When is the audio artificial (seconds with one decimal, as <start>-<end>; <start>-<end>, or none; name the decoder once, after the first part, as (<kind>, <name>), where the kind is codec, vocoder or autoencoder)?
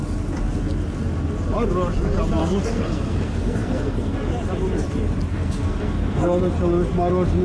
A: 2.4-4.3 (codec, SNAC); 5.3-6.4